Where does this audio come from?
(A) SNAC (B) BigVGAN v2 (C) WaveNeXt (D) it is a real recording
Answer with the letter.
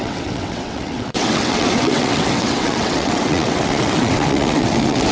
C